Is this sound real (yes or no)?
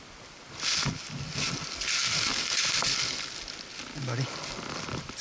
yes